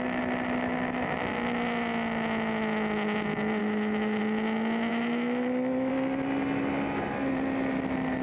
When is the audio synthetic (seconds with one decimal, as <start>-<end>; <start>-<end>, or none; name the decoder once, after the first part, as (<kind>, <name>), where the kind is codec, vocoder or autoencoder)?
3.6-4.2 (autoencoder, DAC-VAE); 4.9-5.9